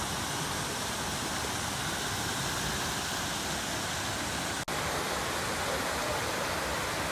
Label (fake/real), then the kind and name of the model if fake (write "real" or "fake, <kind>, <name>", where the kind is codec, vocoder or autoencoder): real